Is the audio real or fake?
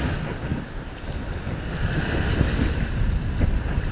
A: real